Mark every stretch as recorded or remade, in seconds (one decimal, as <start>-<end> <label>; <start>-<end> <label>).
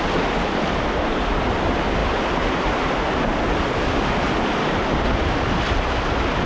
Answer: 0.0-6.5 recorded